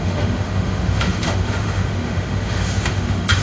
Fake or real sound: fake